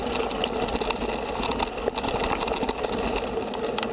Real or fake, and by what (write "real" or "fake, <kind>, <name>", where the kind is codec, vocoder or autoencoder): real